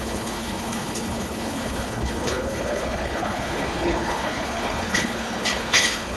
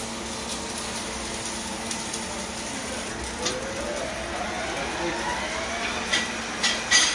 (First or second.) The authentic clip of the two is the second